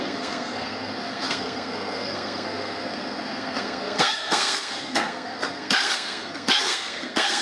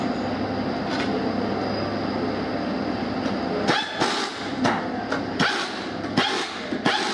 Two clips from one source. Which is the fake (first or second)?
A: first